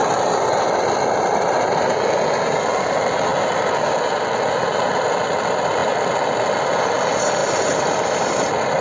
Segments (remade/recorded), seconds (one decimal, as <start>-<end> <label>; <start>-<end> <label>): 0.0-1.9 remade; 1.9-7.4 recorded; 7.4-8.8 remade